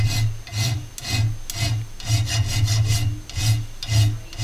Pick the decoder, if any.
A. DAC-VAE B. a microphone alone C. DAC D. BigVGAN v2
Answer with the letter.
B